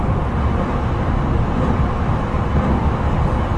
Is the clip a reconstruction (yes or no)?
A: no